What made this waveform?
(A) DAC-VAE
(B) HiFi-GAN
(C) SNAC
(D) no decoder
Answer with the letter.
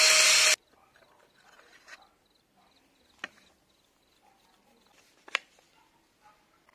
D